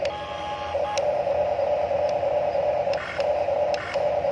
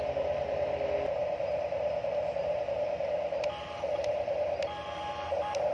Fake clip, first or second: second